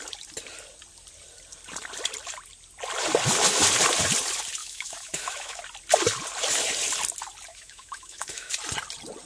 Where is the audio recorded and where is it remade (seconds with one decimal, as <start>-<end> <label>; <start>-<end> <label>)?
0.0-4.6 recorded; 4.6-5.6 remade; 5.6-7.5 recorded; 7.5-8.5 remade; 8.5-9.3 recorded